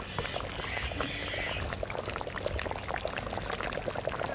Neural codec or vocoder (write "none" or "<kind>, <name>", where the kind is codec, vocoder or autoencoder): none